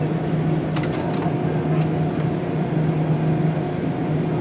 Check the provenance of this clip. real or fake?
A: real